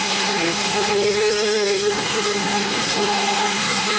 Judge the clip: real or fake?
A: fake